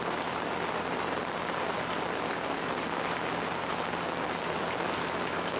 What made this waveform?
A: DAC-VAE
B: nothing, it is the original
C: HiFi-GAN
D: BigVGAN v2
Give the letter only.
B